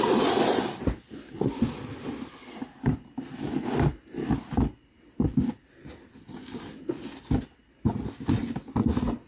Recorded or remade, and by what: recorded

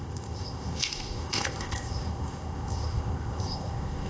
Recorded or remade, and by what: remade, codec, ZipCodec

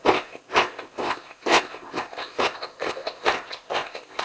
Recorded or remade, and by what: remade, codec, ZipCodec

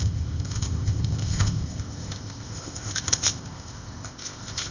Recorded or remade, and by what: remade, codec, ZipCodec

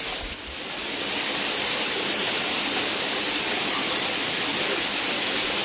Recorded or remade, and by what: recorded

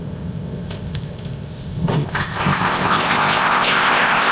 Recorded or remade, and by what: remade, codec, ZipCodec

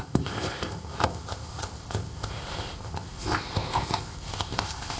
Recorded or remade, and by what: remade, codec, ZipCodec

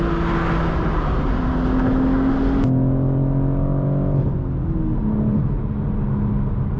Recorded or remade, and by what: recorded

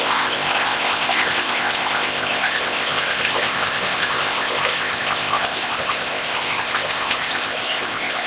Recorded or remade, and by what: remade, codec, ZipCodec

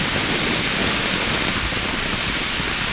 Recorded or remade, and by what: recorded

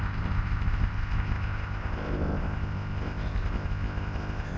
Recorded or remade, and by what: remade, codec, ZipCodec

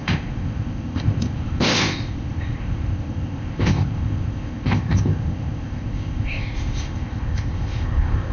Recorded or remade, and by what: remade, codec, ZipCodec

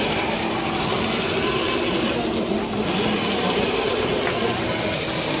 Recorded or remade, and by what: recorded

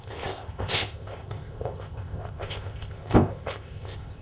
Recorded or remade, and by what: remade, codec, ZipCodec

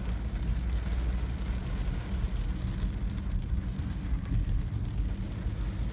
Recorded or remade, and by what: recorded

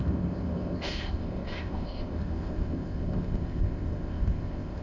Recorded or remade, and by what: remade, codec, ZipCodec